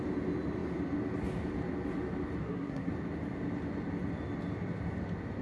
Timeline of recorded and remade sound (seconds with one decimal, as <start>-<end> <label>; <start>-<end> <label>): 0.0-2.4 recorded; 2.4-2.9 remade; 2.9-5.4 recorded